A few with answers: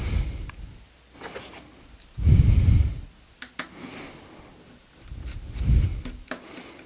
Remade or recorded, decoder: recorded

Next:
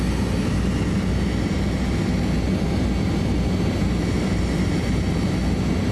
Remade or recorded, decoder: recorded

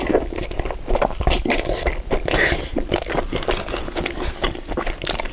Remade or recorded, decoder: recorded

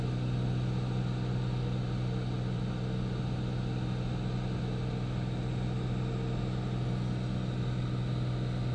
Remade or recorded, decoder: recorded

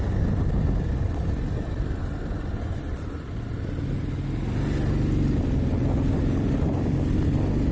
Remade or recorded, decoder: recorded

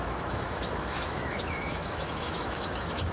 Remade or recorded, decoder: remade, autoencoder, DAC-VAE